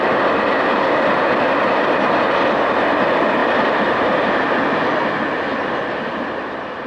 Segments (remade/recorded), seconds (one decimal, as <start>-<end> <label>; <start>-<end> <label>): 0.0-3.4 recorded; 3.4-4.3 remade; 4.3-6.9 recorded